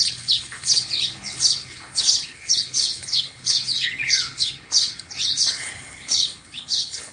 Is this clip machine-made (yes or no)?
yes